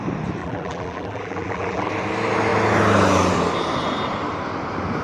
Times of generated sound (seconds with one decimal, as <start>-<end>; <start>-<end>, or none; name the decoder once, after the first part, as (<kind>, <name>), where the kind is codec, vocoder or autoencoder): 0.4-1.9 (vocoder, BigVGAN v2)